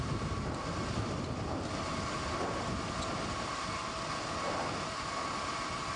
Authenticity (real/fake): real